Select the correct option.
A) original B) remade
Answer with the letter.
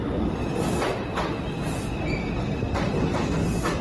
A